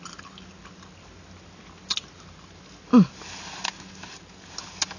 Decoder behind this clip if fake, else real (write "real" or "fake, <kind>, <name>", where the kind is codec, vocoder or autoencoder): real